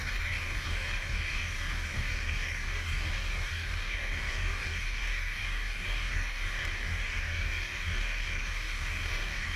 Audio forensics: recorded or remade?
remade